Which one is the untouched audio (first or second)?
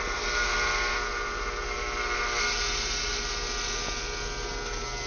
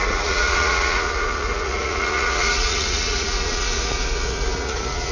first